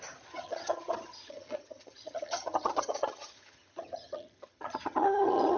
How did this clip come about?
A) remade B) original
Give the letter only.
A